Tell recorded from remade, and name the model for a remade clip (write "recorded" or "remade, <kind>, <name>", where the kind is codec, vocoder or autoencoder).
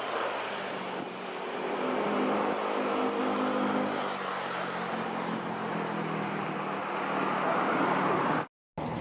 recorded